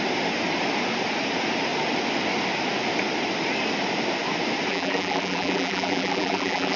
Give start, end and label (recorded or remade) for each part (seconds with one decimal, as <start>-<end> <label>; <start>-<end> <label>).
0.0-4.7 recorded; 4.7-6.8 remade